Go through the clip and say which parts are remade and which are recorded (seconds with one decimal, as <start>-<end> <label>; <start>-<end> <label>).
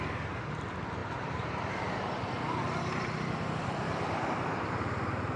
0.0-1.0 recorded; 1.0-1.7 remade; 1.7-5.4 recorded